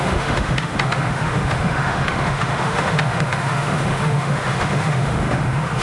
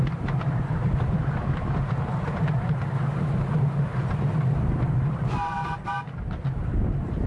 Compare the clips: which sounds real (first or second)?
second